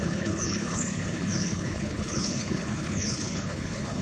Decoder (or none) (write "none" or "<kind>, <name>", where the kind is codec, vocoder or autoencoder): codec, HILCodec